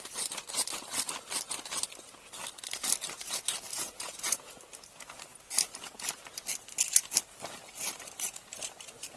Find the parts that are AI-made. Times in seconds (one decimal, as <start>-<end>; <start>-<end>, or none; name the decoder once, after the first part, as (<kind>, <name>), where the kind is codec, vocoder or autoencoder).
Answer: 3.7-4.6 (vocoder, Vocos)